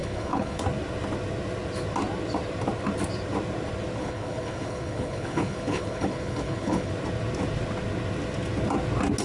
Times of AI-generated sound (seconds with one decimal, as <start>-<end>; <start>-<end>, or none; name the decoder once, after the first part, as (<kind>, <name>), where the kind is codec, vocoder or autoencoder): 0.0-0.6 (codec, HILCodec); 4.0-6.9